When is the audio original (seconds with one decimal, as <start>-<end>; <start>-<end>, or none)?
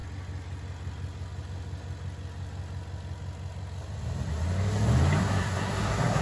0.0-5.2